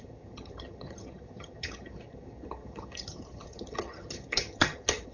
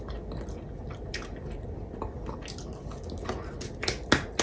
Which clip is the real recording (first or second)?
second